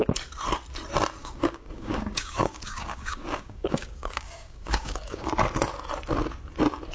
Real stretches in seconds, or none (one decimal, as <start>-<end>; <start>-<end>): 0.0-1.2; 5.3-6.9